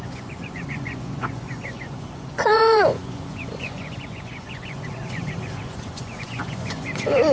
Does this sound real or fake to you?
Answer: fake